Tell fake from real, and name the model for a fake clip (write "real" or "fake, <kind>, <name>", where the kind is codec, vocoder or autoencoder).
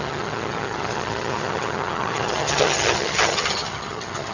fake, vocoder, HiFi-GAN